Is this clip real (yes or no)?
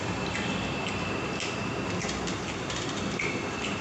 yes